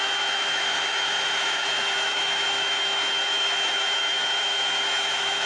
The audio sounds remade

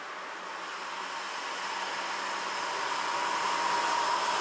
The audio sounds recorded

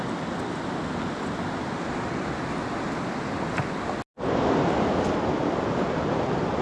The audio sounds recorded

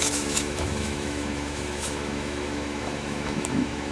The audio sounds remade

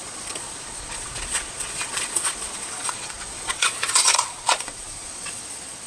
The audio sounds remade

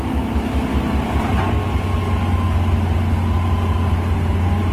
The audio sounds recorded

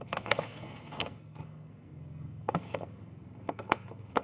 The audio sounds remade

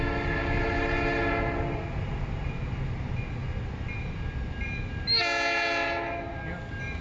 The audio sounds recorded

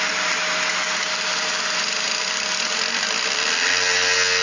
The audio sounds recorded